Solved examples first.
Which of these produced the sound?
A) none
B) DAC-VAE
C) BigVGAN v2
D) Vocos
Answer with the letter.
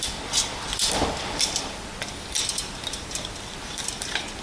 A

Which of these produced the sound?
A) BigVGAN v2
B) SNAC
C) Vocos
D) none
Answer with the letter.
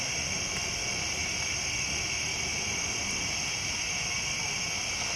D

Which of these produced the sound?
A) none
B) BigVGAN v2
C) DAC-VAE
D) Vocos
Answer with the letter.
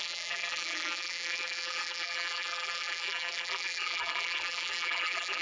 B